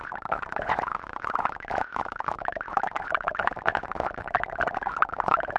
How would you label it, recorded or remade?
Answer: remade